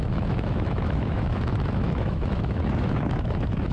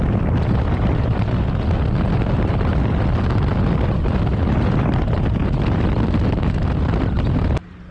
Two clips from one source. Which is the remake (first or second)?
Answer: first